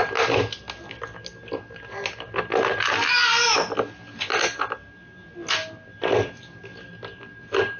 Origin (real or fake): real